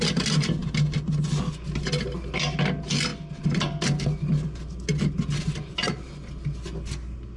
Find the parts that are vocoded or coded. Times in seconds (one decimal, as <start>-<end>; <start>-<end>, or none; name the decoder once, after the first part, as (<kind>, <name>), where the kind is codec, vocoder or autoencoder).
none